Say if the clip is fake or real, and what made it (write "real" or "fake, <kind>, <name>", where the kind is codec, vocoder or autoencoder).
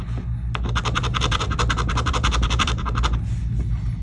real